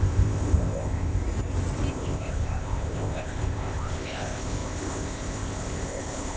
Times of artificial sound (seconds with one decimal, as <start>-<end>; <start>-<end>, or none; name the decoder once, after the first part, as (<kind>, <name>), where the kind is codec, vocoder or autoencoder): 0.0-1.2 (codec, ZipCodec); 1.9-6.4